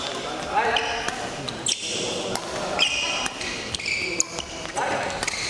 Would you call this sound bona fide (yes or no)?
yes